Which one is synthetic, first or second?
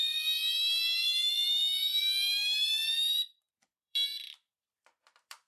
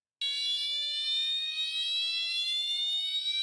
first